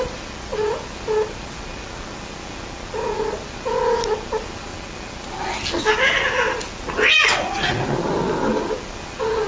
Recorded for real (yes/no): yes